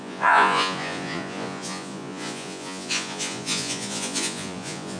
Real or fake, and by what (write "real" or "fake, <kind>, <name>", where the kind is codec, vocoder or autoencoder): fake, vocoder, Vocos